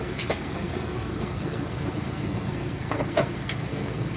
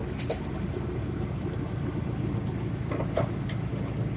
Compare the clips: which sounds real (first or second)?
second